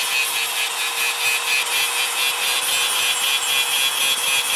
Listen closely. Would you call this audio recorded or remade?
recorded